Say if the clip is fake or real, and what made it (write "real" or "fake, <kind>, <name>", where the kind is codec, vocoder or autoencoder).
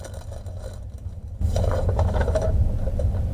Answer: real